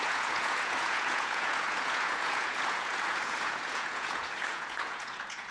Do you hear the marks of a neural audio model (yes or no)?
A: yes